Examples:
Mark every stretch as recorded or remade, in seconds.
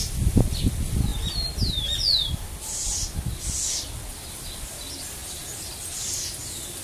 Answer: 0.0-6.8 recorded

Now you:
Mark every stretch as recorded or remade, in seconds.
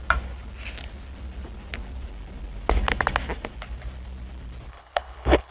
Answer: 0.0-4.7 recorded; 4.7-5.5 remade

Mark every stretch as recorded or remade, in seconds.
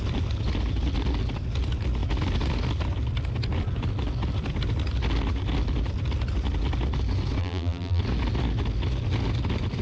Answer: 0.0-7.4 recorded; 7.4-8.0 remade; 8.0-9.8 recorded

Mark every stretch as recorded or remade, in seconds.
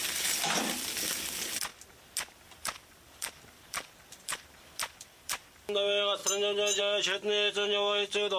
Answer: 0.0-1.7 remade; 1.7-2.3 recorded; 2.3-6.2 remade; 6.2-6.8 recorded; 6.8-8.4 remade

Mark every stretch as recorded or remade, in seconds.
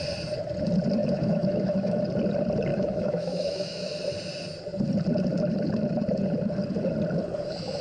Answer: 0.0-1.0 recorded; 1.0-2.0 remade; 2.0-2.7 recorded; 2.7-4.0 remade; 4.0-7.8 recorded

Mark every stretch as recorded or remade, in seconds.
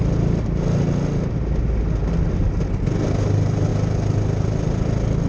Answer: 0.0-5.3 recorded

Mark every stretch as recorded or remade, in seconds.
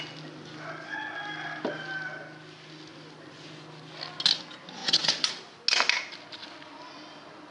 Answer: 0.0-4.8 recorded; 4.8-5.3 remade; 5.3-7.5 recorded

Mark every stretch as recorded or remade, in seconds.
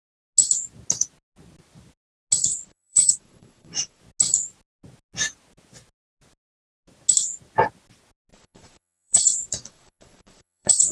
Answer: 0.0-2.5 recorded; 2.5-4.0 remade; 4.0-8.3 recorded; 8.3-10.9 remade